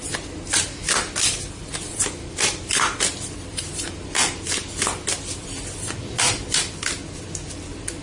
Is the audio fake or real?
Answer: real